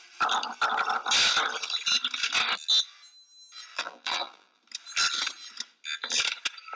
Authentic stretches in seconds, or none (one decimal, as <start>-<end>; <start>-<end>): 0.0-3.7; 4.6-6.8

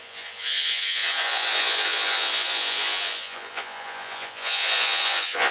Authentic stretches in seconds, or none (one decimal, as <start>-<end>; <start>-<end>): none

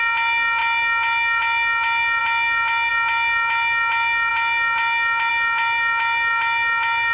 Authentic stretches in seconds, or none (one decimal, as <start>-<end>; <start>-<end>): 0.0-7.1